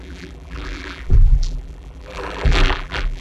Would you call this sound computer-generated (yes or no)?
yes